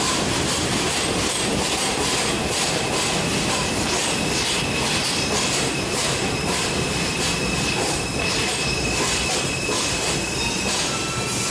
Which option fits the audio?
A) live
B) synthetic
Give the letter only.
B